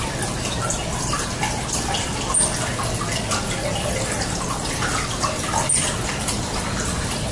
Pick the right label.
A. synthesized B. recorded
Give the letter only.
B